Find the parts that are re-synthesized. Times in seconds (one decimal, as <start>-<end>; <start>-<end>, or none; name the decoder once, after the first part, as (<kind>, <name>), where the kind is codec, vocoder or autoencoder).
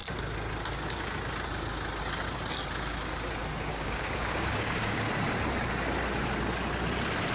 3.7-5.1 (codec, DAC)